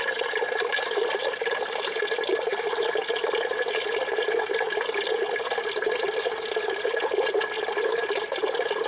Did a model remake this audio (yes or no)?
no